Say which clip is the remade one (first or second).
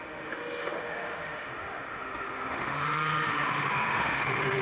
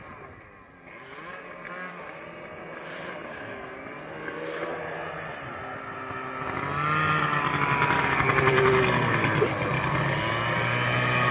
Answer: first